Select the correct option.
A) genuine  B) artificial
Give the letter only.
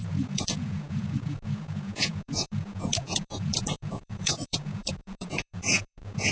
B